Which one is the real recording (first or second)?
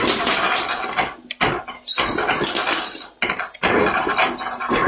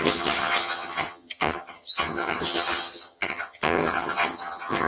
first